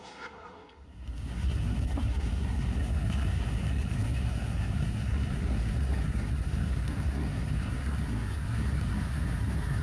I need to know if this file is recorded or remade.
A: remade